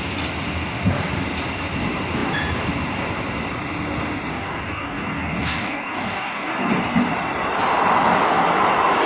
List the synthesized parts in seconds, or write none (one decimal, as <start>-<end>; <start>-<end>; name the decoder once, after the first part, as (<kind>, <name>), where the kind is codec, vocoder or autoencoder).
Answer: 4.3-6.7 (codec, DAC)